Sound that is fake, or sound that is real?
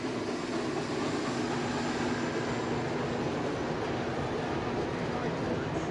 real